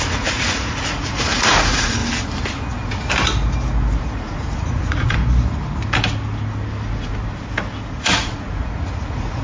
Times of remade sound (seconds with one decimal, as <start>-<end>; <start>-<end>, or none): 0.0-2.0; 4.0-5.2; 7.9-9.4